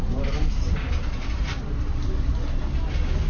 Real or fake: real